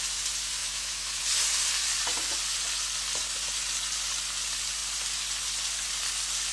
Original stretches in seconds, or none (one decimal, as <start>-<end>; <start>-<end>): 0.0-0.6; 1.2-6.5